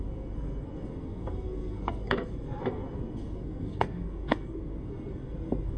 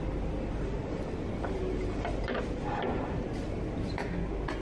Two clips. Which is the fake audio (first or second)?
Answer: first